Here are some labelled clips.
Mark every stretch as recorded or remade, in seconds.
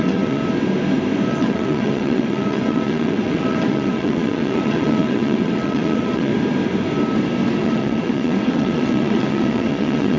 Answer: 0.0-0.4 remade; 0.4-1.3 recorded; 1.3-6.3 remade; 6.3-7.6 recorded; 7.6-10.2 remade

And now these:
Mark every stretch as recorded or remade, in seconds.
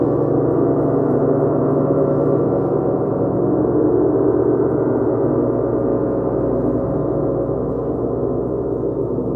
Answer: 0.0-5.9 recorded; 5.9-6.4 remade; 6.4-9.4 recorded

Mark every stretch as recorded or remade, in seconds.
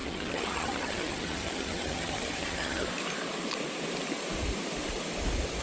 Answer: 0.0-2.9 remade; 2.9-5.6 recorded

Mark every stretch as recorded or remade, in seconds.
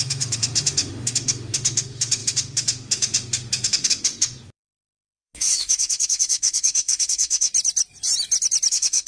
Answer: 0.0-7.5 remade; 7.5-8.7 recorded; 8.7-9.1 remade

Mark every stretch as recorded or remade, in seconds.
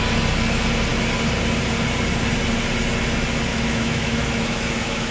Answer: 0.0-3.5 recorded; 3.5-5.1 remade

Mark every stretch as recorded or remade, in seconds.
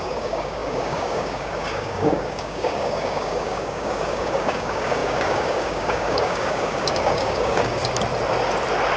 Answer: 0.0-7.8 remade; 7.8-9.0 recorded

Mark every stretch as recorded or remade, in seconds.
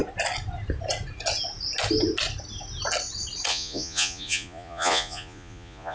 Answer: 0.0-3.5 recorded; 3.5-5.9 remade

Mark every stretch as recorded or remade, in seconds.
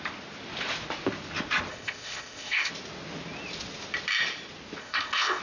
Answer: 0.0-1.7 recorded; 1.7-2.7 remade; 2.7-4.8 recorded; 4.8-5.4 remade